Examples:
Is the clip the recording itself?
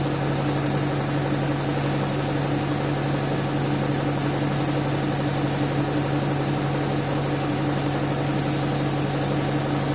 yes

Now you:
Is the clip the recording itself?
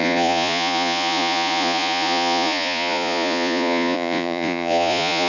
no